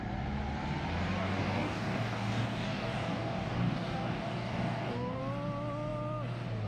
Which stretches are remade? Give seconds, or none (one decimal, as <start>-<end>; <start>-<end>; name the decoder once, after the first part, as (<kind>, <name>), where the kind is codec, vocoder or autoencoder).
1.2-5.2 (codec, DAC)